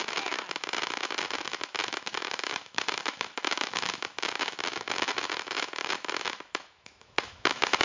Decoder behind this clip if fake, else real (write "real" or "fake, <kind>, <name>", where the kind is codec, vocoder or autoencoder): fake, autoencoder, DAC-VAE